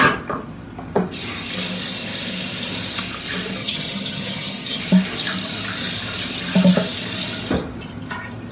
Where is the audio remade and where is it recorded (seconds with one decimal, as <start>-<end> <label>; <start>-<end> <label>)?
0.0-3.6 recorded; 3.6-4.8 remade; 4.8-8.5 recorded